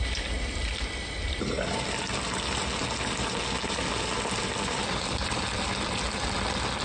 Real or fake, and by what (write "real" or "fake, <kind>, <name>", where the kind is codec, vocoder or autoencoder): real